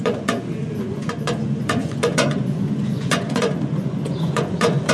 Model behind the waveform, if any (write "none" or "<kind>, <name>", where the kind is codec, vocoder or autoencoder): vocoder, Vocos